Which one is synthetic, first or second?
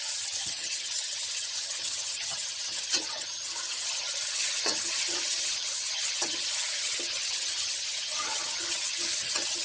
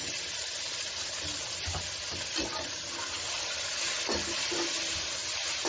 first